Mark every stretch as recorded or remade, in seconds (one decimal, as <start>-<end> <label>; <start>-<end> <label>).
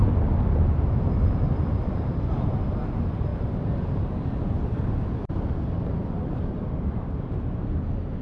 0.0-8.2 recorded